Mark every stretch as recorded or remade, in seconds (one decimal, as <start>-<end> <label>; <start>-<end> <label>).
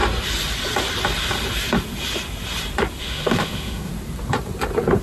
0.0-3.0 recorded; 3.0-3.9 remade; 3.9-5.0 recorded